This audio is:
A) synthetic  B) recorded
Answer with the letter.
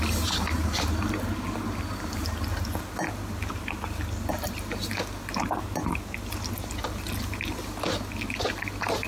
B